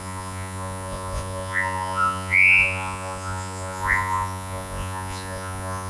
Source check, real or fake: fake